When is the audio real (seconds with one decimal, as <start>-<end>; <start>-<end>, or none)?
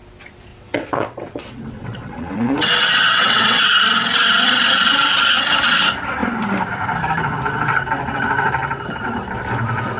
0.0-0.5; 3.6-10.0